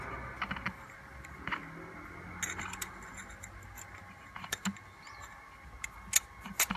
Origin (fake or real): real